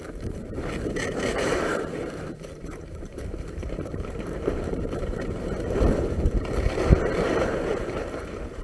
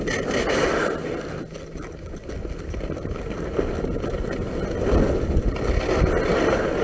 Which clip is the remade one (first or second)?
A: first